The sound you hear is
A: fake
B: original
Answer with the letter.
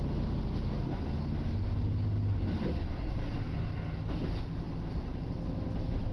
B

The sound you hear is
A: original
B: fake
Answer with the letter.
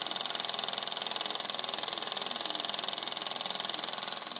A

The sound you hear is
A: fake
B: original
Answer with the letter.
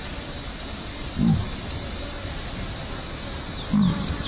B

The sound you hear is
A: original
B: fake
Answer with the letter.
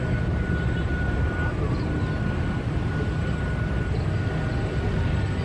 A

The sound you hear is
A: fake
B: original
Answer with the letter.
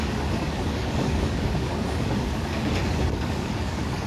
A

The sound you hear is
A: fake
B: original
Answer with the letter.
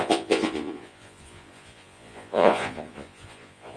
A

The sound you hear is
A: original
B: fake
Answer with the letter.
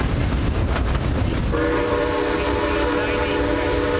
A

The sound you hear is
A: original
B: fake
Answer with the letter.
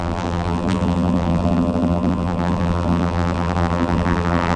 B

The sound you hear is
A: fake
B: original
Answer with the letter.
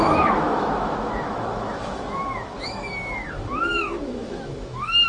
A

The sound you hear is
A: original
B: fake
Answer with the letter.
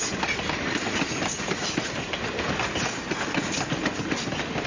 A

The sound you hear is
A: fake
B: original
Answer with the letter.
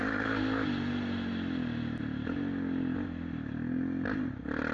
B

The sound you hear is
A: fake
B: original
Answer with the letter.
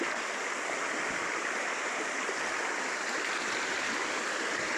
B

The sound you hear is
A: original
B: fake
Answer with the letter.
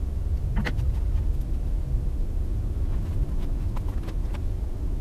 A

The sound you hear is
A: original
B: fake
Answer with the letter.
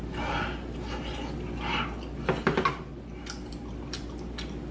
A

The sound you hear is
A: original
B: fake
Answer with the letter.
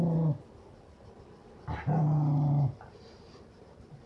A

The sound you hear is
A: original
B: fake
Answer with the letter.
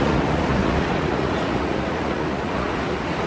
B